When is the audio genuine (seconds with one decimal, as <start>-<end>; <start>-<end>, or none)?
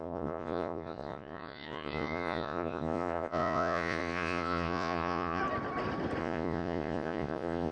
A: 5.4-6.2